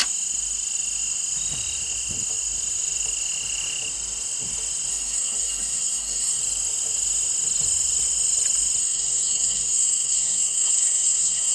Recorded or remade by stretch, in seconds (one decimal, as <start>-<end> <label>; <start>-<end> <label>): 0.0-4.9 recorded; 4.9-6.4 remade; 6.4-8.8 recorded; 8.8-11.5 remade